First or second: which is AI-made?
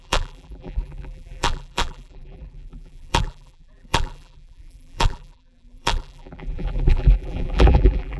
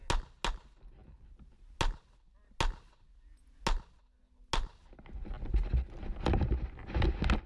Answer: first